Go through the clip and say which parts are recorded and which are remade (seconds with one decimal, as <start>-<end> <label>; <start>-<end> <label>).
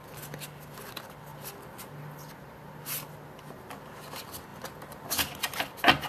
0.0-1.3 recorded; 1.3-4.0 remade; 4.0-6.1 recorded